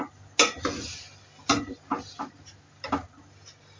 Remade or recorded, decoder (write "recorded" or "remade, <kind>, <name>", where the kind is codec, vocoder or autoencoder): recorded